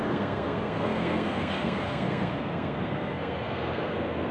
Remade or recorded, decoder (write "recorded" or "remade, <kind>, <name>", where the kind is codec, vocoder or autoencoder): remade, codec, SNAC